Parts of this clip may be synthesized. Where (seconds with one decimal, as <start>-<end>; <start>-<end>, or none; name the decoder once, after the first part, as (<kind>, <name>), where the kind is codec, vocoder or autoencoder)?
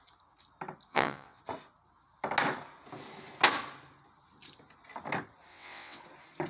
0.9-1.4 (vocoder, WaveNeXt); 5.5-6.0